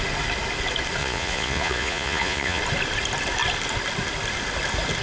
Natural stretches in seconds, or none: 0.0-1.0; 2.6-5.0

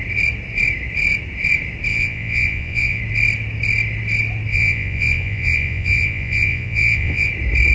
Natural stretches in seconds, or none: 0.0-1.9; 3.0-4.5; 7.3-7.7